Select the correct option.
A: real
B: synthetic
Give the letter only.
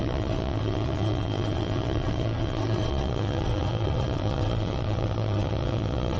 B